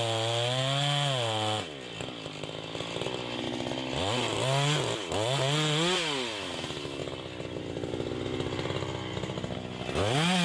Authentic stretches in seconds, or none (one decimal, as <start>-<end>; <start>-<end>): 0.0-10.4